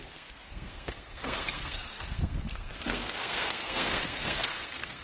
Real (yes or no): no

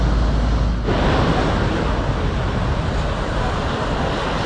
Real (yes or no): yes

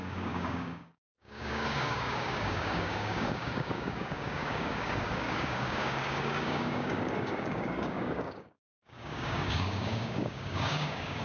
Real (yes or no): no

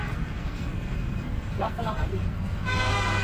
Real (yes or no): no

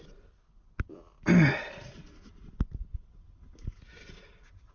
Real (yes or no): yes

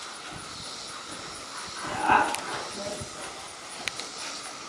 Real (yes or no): yes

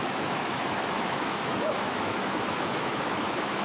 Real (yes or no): no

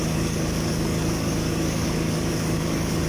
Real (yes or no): no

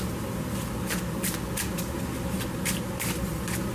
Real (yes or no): yes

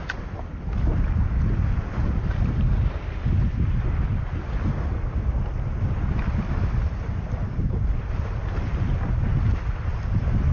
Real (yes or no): yes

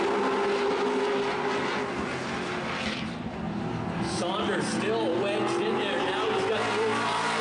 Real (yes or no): yes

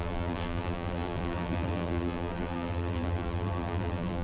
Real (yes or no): no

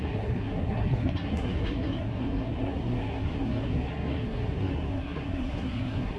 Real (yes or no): no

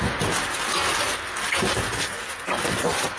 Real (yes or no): yes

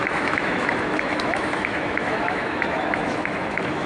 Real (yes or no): no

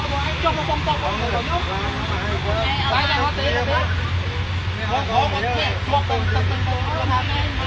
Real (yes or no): yes